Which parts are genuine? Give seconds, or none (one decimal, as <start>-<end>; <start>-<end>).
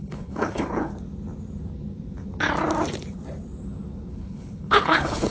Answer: 0.9-4.1